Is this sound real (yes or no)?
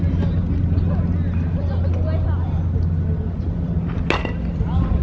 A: yes